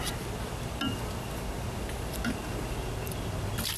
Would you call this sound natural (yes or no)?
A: yes